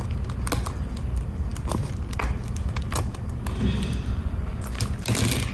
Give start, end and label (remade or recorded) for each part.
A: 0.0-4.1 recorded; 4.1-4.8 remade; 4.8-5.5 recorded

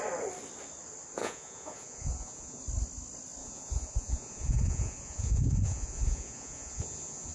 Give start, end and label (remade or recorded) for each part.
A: 0.0-1.2 recorded; 1.2-2.6 remade; 2.6-3.4 recorded; 3.4-7.3 remade

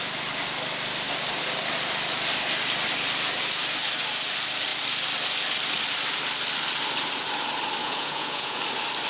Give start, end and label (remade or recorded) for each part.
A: 0.0-7.8 recorded; 7.8-8.6 remade; 8.6-9.1 recorded